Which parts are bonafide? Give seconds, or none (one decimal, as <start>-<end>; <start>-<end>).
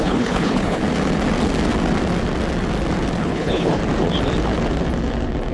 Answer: 0.8-3.2; 3.8-5.5